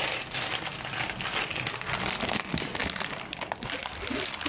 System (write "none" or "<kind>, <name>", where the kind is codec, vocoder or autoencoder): none